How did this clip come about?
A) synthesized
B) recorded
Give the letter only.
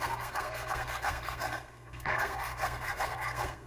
A